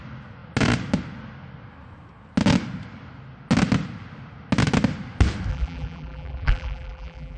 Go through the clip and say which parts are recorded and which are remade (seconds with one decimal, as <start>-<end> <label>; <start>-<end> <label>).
0.0-5.5 recorded; 5.5-7.4 remade